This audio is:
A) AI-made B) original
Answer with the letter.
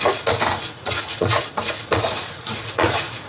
A